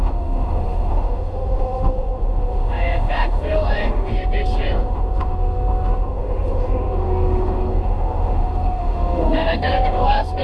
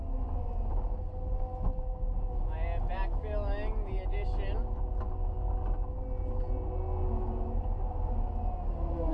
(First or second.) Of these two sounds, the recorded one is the second